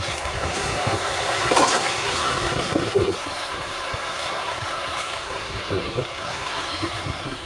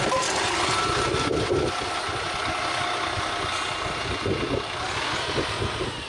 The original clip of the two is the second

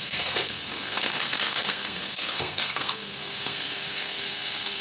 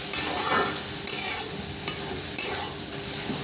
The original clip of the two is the second